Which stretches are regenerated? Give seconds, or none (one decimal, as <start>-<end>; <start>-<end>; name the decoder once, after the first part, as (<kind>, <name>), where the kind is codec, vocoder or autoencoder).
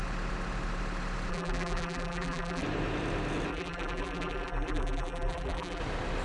1.3-2.6 (vocoder, BigVGAN v2); 3.5-5.8